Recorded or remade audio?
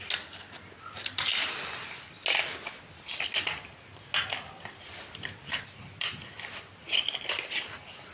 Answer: recorded